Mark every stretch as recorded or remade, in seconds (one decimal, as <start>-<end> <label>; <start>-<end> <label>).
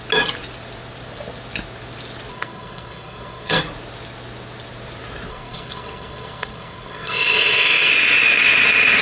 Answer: 0.0-2.3 recorded; 2.3-3.6 remade; 3.6-5.3 recorded; 5.3-7.9 remade; 7.9-9.0 recorded